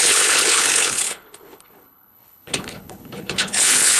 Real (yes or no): no